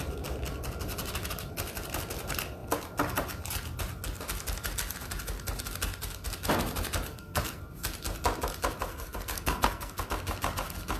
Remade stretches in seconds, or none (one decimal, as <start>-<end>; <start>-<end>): 7.1-7.6; 8.9-10.0